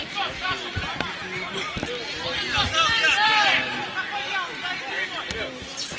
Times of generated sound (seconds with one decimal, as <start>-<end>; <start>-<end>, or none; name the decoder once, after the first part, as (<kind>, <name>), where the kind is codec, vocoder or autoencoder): none